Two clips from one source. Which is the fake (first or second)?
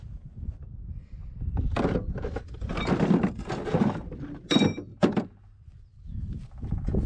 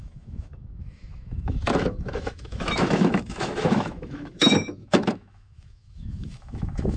second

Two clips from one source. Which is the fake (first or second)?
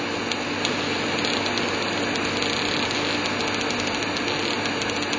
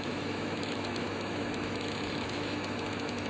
second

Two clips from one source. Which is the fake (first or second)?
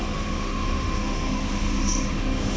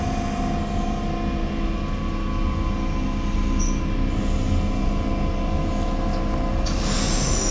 first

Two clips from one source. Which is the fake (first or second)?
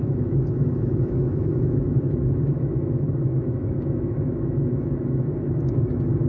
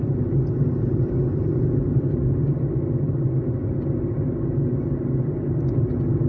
first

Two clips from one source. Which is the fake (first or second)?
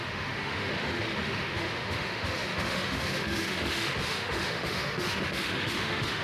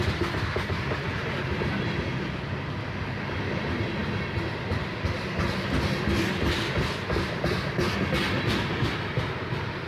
first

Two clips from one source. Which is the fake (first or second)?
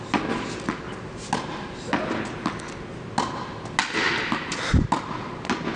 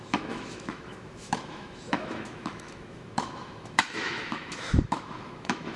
second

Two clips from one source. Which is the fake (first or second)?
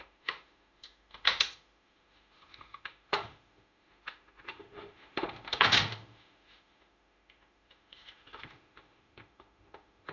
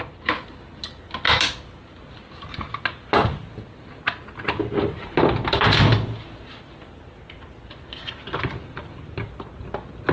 first